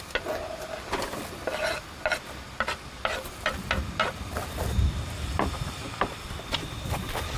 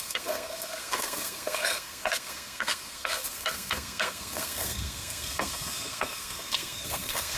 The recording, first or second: first